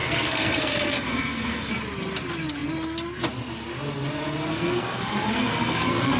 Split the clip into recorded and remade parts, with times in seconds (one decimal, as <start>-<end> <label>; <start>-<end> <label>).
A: 0.0-1.7 remade; 1.7-4.5 recorded; 4.5-6.2 remade